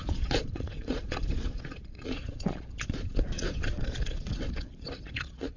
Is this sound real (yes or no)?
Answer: no